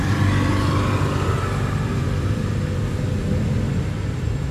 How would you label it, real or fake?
fake